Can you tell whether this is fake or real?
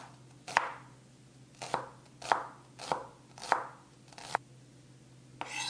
real